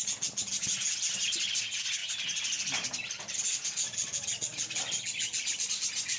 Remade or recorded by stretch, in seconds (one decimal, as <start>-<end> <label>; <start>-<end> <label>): 0.0-6.2 recorded